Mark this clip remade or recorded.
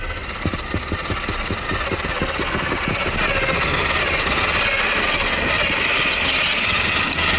recorded